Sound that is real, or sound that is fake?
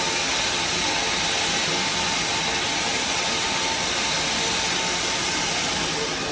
real